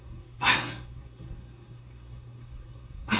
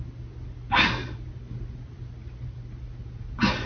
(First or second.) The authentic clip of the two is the second